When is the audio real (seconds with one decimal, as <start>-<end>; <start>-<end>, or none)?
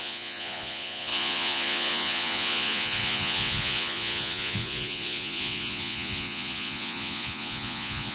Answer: none